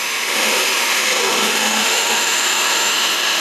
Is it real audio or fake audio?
fake